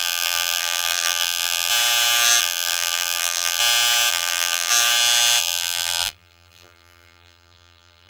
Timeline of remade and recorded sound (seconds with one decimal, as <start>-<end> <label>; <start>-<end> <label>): 0.0-1.7 remade; 1.7-2.4 recorded; 2.4-3.6 remade; 3.6-4.1 recorded; 4.1-4.7 remade; 4.7-5.4 recorded; 5.4-8.1 remade